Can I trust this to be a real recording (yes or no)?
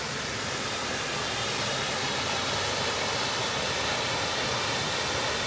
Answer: yes